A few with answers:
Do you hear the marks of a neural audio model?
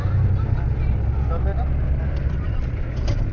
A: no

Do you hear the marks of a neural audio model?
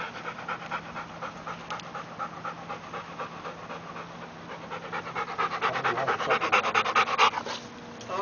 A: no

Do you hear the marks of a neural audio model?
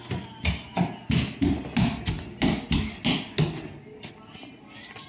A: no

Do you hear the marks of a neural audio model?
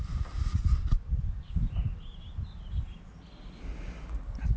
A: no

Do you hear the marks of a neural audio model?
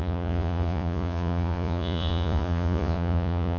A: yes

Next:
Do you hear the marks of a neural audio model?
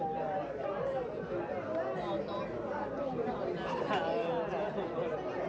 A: no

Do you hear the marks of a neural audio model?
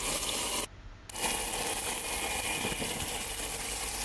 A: no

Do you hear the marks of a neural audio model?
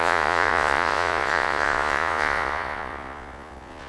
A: yes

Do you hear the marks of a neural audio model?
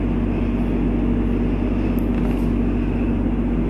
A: no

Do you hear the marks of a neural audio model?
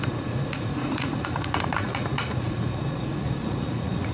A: yes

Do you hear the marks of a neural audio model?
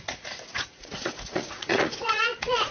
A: yes